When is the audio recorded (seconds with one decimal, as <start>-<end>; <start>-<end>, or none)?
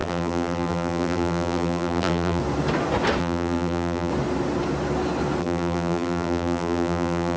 2.4-3.2; 4.1-5.4